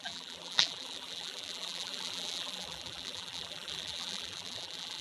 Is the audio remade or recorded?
remade